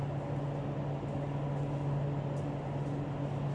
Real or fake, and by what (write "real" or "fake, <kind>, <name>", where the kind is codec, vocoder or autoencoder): real